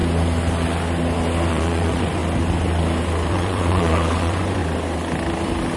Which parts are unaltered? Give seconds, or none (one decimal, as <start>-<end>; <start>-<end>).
0.0-1.5; 2.2-3.3; 4.6-5.8